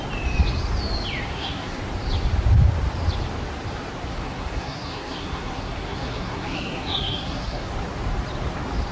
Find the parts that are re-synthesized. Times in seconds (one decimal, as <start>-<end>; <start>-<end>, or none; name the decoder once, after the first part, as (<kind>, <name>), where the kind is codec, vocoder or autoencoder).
1.3-1.8 (codec, SNAC); 4.1-7.7

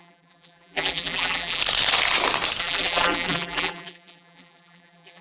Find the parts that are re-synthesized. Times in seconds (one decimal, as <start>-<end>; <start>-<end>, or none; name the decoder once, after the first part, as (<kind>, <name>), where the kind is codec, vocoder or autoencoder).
0.0-1.6 (vocoder, BigVGAN v2); 2.6-5.2

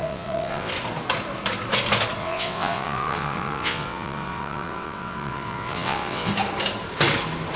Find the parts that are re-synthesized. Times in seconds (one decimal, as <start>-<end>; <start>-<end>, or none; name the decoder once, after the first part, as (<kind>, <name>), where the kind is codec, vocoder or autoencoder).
0.0-0.7 (vocoder, WaveNeXt); 2.2-6.3

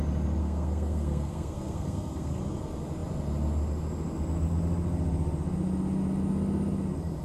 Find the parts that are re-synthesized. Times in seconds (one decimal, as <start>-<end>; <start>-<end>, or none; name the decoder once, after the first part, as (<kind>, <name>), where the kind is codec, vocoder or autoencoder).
0.4-2.4 (codec, SNAC)

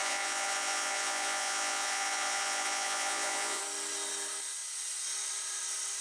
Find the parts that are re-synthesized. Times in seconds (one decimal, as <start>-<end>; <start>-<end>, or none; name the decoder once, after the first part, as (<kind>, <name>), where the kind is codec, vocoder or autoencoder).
0.0-3.6 (vocoder, Vocos)

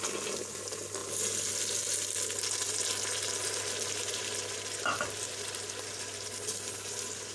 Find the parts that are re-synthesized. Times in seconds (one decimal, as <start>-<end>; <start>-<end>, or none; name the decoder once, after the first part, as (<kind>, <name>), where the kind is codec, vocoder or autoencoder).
none